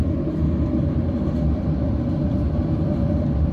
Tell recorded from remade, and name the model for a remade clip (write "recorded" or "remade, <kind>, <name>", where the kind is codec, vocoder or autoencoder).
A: remade, vocoder, BigVGAN v2